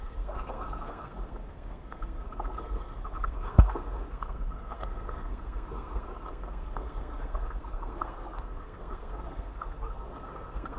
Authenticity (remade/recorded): remade